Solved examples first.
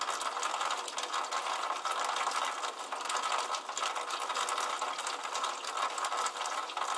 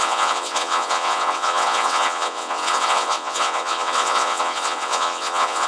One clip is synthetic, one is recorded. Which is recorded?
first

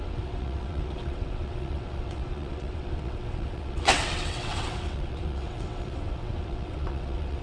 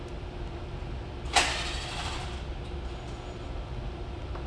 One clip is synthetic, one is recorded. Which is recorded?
second